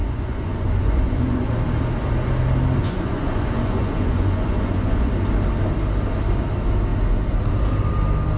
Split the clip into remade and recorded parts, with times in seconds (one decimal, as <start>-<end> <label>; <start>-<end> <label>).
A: 0.0-1.5 remade; 1.5-2.8 recorded; 2.8-5.1 remade; 5.1-8.4 recorded